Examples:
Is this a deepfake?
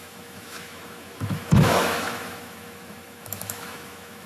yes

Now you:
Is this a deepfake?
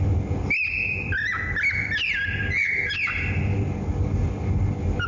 no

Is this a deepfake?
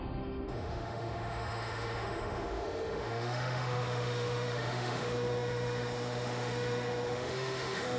yes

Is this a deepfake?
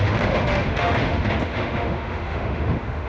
yes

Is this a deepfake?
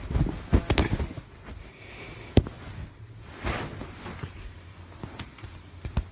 no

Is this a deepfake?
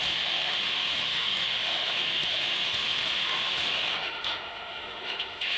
yes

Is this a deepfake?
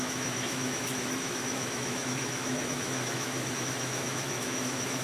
yes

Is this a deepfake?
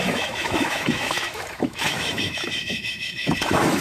yes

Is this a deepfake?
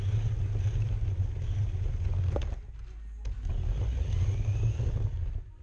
no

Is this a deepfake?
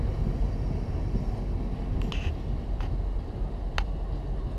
no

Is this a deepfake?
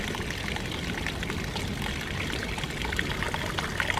no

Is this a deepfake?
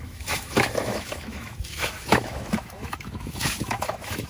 yes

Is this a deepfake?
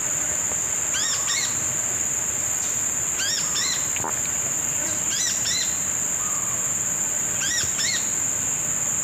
no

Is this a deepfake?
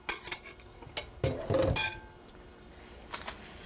no